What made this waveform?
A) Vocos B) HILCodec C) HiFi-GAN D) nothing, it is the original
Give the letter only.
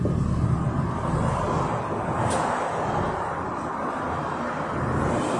D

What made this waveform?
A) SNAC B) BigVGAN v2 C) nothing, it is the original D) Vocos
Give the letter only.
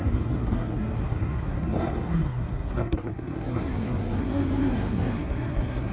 A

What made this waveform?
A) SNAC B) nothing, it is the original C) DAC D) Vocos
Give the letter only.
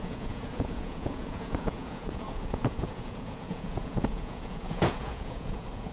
D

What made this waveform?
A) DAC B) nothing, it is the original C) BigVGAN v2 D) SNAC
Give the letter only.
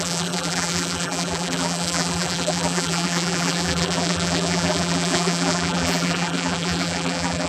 C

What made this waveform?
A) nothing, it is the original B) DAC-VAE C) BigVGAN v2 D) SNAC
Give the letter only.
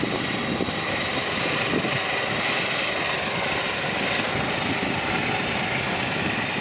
A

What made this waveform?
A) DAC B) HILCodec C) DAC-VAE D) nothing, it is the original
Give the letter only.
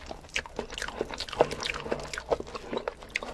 D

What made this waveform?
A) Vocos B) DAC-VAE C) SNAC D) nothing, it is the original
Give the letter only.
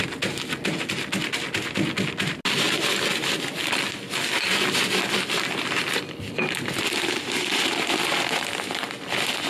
D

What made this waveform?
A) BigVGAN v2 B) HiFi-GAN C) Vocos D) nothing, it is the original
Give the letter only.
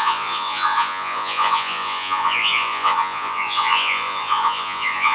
C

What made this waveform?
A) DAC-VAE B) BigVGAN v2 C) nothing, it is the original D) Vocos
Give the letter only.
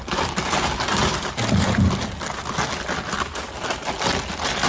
C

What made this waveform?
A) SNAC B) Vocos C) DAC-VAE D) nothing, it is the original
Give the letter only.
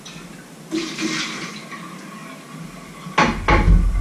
D